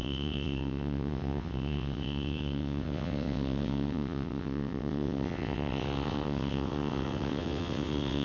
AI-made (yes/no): yes